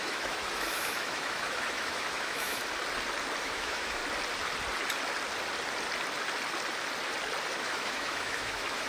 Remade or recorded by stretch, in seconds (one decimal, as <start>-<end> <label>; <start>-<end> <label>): 0.0-2.6 remade; 2.6-3.4 recorded; 3.4-4.0 remade; 4.0-7.6 recorded; 7.6-8.9 remade